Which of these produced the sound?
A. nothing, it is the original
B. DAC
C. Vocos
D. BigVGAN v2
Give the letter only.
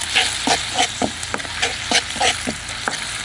A